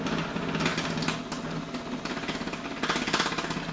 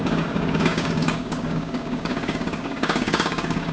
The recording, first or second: first